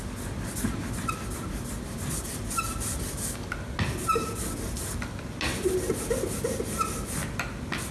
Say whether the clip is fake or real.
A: real